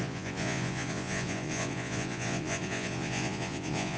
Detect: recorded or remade remade